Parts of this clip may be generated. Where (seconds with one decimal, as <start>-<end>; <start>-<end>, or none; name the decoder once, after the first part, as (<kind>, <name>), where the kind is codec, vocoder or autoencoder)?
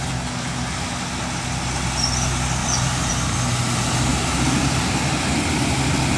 2.6-3.1 (vocoder, BigVGAN v2); 4.1-4.8